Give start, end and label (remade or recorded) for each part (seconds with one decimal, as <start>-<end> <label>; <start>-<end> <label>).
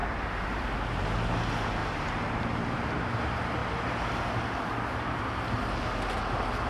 0.0-0.6 remade; 0.6-1.8 recorded; 1.8-2.6 remade; 2.6-6.7 recorded